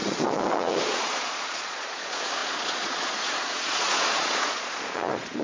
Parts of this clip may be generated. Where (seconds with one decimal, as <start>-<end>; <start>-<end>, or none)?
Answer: 0.0-5.4